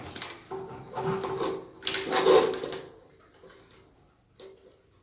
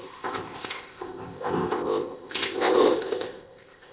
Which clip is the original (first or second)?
first